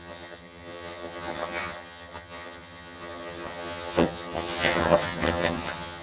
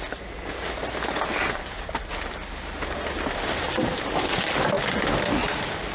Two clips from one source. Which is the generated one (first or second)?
first